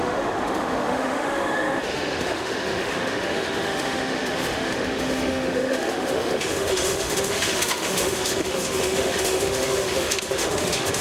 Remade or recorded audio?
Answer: remade